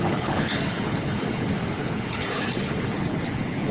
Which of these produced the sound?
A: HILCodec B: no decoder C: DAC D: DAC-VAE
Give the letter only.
A